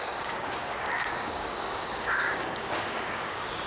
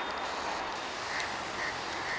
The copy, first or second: first